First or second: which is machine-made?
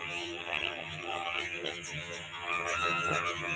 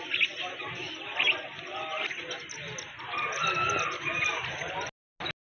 first